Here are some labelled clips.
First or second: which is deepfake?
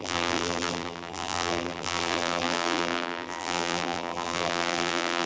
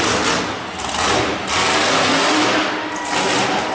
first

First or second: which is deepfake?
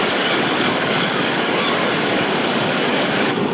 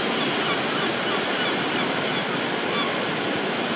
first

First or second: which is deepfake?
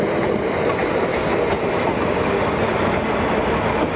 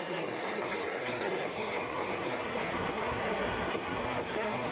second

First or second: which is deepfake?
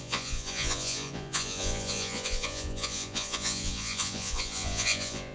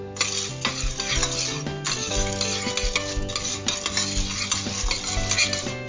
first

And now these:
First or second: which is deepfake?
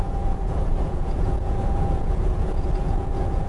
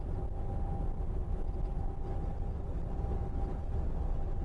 first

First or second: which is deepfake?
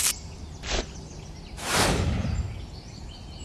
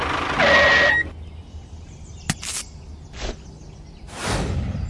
first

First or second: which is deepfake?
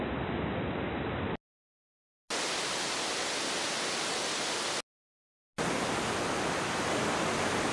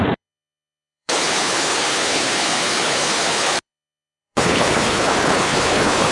second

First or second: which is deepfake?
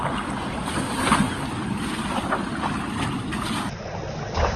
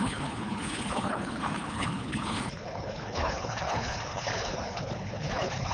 second